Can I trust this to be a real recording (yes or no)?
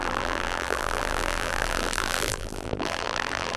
no